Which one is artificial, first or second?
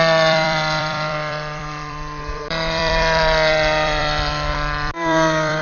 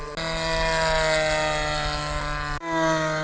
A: first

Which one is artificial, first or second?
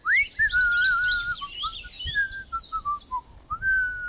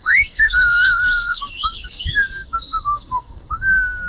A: second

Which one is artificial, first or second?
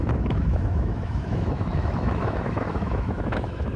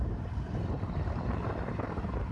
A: first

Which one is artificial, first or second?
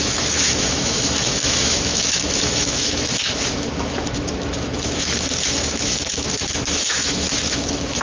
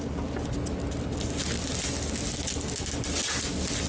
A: first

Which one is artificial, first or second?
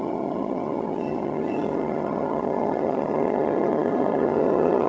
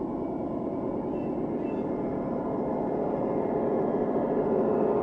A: first